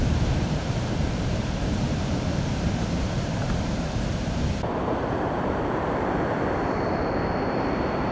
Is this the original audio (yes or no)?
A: no